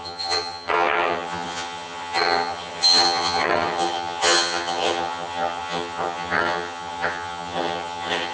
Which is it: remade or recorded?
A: remade